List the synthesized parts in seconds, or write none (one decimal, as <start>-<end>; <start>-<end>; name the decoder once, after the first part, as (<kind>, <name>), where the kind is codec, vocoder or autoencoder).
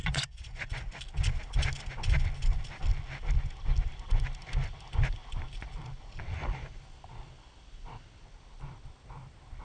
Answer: 0.0-0.7 (vocoder, Vocos)